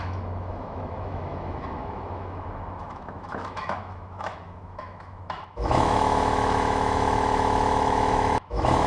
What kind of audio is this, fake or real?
fake